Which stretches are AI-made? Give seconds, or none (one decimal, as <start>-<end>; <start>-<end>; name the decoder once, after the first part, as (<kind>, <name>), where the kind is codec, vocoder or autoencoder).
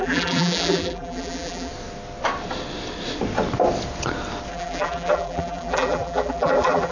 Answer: 0.0-1.7 (vocoder, BigVGAN v2); 4.5-6.9